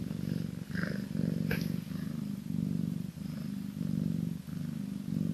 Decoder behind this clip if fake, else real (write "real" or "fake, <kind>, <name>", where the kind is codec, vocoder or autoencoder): real